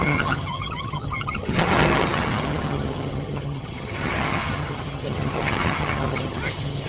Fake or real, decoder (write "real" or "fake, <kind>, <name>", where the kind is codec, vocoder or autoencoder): fake, vocoder, HiFi-GAN